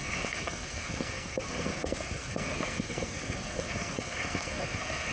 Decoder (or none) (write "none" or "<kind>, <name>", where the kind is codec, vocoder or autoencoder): codec, SNAC